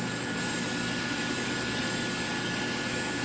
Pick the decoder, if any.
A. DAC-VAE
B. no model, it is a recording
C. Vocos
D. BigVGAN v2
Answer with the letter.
B